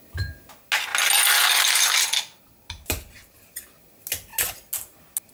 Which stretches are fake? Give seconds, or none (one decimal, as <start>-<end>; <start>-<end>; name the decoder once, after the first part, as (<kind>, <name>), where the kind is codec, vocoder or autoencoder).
none